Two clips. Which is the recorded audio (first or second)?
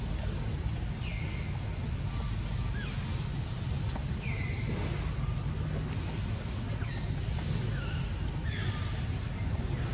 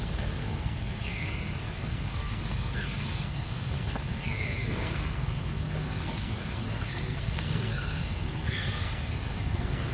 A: first